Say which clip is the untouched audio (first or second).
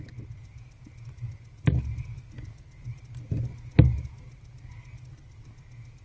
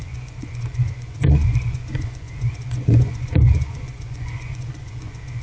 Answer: first